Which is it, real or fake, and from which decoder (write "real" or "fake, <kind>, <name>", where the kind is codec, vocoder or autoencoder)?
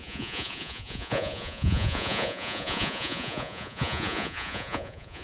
fake, vocoder, Vocos